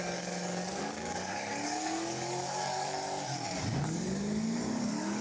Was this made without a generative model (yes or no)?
no